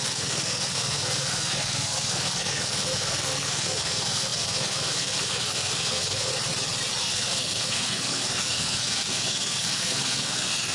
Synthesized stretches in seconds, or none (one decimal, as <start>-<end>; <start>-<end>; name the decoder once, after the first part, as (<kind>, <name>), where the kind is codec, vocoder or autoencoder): 0.0-6.3 (codec, SNAC); 7.0-10.7